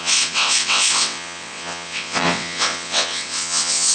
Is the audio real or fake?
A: fake